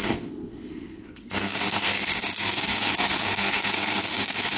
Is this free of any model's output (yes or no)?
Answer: no